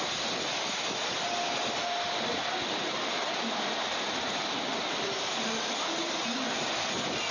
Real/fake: real